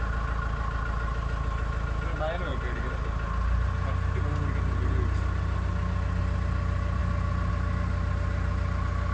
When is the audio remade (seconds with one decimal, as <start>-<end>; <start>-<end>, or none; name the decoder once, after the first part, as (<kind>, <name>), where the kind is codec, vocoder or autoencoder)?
none